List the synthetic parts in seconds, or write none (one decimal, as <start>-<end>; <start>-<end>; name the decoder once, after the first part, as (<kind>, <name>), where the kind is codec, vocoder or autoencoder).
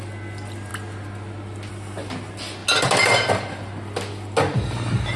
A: none